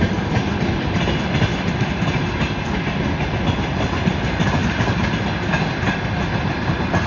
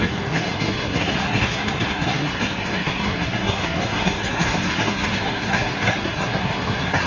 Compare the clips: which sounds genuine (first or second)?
first